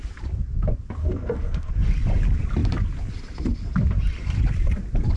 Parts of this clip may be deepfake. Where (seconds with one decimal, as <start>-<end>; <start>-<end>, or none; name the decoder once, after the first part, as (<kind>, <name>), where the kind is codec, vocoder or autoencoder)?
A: 1.0-1.7 (codec, SNAC)